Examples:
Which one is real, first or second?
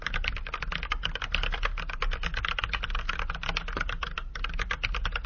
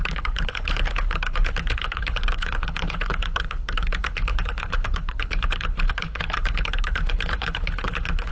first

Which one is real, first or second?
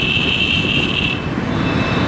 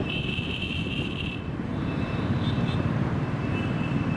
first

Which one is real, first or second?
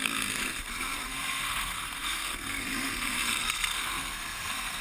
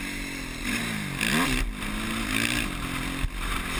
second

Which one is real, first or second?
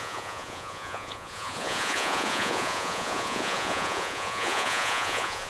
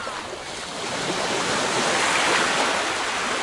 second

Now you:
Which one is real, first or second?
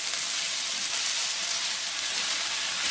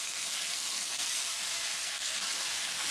first